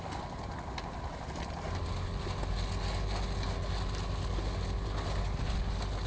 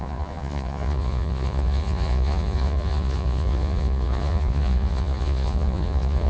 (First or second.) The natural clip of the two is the first